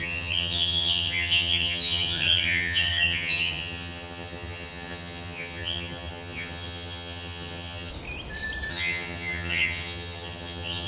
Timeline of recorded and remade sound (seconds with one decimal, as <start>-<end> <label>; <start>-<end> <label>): 0.0-7.9 remade; 7.9-8.7 recorded; 8.7-10.9 remade